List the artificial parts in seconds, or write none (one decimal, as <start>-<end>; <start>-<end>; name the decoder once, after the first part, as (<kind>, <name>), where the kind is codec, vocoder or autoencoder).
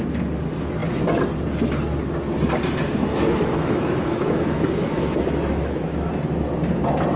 3.1-6.1 (autoencoder, DAC-VAE)